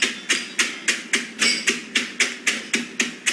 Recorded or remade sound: recorded